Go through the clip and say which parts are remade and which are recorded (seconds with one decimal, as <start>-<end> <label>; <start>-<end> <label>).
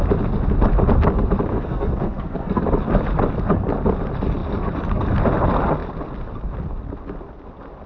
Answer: 0.0-1.5 recorded; 1.5-2.6 remade; 2.6-7.9 recorded